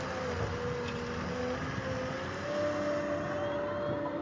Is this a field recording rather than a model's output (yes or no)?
yes